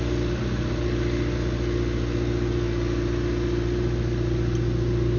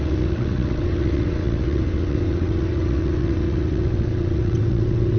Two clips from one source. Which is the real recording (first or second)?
first